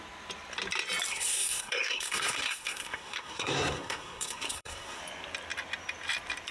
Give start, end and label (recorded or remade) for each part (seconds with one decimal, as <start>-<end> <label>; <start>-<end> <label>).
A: 0.0-1.1 recorded; 1.1-5.0 remade; 5.0-6.5 recorded